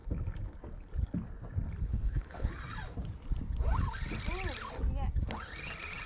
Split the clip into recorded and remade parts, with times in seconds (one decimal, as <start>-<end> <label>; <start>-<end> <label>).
0.0-1.9 recorded; 1.9-2.5 remade; 2.5-6.1 recorded